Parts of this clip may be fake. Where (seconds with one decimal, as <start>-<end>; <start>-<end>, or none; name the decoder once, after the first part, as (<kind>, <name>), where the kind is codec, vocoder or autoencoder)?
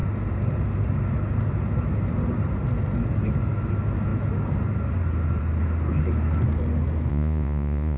7.1-8.0 (vocoder, Vocos)